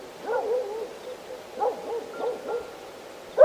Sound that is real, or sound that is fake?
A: real